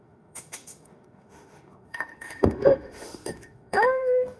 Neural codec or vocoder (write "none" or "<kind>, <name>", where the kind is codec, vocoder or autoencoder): autoencoder, DAC-VAE